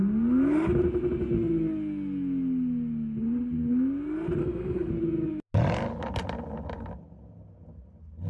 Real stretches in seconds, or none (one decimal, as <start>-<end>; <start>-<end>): 0.0-4.4; 4.9-8.3